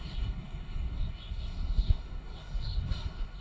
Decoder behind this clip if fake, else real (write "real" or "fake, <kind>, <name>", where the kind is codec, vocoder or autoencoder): fake, codec, SNAC